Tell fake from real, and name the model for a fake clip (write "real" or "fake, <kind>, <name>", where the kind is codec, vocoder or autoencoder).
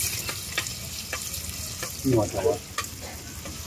real